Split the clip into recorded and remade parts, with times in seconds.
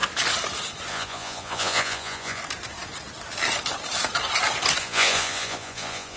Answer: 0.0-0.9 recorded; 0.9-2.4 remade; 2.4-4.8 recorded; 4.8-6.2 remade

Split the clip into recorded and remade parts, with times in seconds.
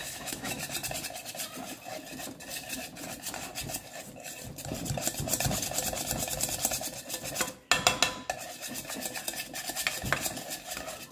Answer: 0.0-0.6 remade; 0.6-11.1 recorded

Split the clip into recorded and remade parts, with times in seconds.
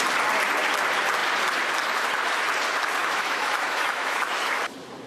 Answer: 0.0-3.0 recorded; 3.0-4.5 remade; 4.5-5.1 recorded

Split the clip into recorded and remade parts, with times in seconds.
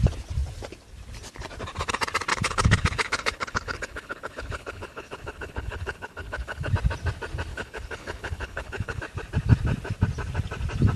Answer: 0.0-2.3 recorded; 2.3-6.7 remade; 6.7-7.5 recorded; 7.5-9.0 remade; 9.0-11.0 recorded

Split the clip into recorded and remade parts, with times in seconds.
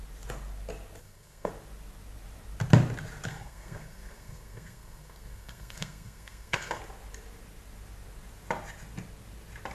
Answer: 0.0-1.0 recorded; 1.0-1.5 remade; 1.5-3.3 recorded; 3.3-6.8 remade; 6.8-9.7 recorded